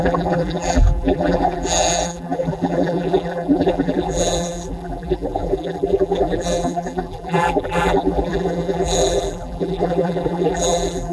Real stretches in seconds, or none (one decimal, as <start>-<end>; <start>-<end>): none